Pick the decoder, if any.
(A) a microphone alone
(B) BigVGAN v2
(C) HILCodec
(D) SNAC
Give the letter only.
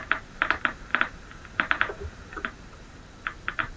B